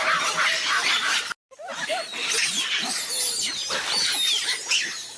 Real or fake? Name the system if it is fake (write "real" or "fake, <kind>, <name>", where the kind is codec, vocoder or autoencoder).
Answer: real